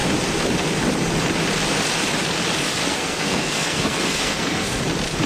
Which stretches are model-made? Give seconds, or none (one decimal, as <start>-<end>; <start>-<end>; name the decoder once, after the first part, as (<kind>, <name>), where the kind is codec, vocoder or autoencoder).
2.8-4.8 (codec, SNAC)